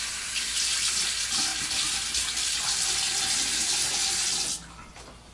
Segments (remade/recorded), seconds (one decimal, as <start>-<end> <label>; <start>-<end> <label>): 0.0-1.5 remade; 1.5-4.7 recorded; 4.7-5.3 remade